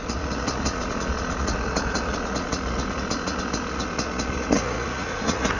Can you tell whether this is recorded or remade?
remade